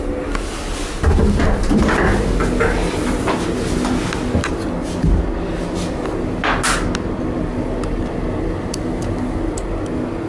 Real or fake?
real